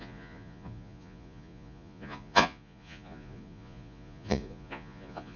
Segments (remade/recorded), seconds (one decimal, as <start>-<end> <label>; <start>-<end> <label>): 0.0-5.4 remade